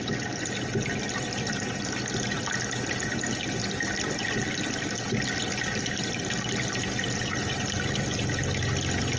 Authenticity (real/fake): real